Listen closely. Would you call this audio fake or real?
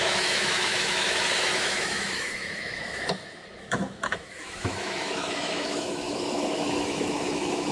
fake